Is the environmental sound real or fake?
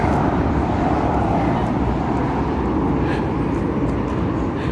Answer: real